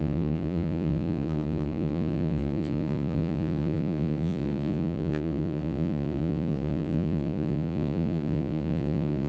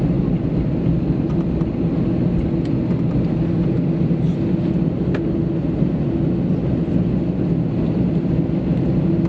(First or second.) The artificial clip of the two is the first